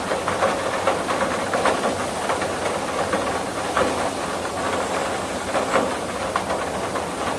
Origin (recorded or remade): recorded